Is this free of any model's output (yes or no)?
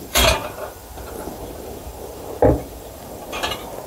no